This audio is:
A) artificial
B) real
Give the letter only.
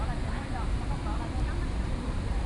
B